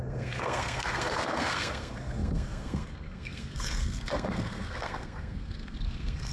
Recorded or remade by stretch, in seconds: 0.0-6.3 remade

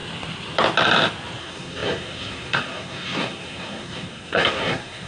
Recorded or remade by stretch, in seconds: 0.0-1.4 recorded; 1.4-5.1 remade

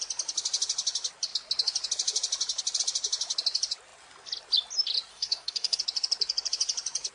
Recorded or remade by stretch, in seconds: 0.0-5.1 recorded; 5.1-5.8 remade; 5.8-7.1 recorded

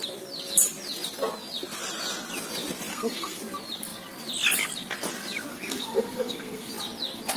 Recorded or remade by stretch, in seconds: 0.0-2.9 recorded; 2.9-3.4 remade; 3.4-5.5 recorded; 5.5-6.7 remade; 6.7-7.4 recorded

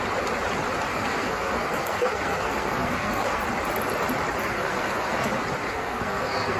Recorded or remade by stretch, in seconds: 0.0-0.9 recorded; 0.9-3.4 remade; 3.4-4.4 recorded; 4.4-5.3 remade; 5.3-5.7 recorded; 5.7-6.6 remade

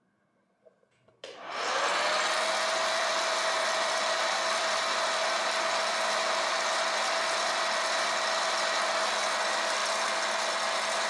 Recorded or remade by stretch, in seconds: 0.0-11.1 recorded